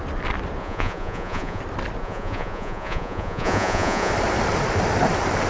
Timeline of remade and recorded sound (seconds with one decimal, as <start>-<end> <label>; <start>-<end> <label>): 0.0-0.6 recorded; 0.6-1.6 remade; 1.6-2.0 recorded; 2.0-4.1 remade; 4.1-5.5 recorded